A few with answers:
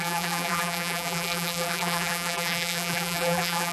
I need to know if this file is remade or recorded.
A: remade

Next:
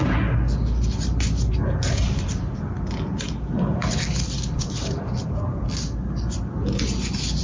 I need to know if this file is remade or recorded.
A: recorded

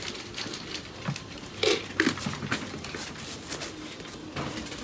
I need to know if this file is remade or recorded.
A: remade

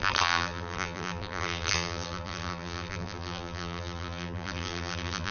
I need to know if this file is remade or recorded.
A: remade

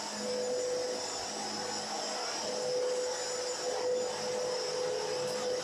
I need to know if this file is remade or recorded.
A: recorded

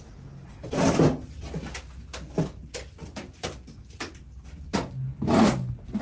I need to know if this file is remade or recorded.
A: recorded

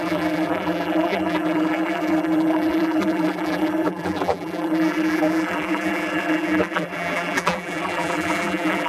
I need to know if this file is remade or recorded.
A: remade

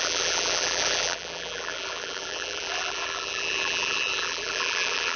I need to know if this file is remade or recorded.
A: remade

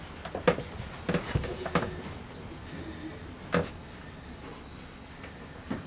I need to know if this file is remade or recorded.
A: recorded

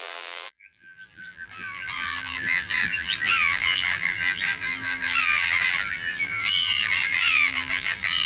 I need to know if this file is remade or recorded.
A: remade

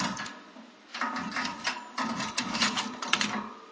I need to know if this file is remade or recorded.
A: recorded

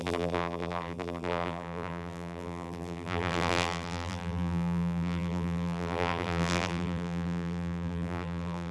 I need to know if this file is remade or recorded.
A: remade